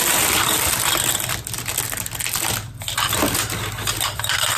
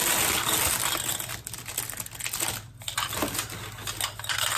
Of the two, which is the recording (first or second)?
second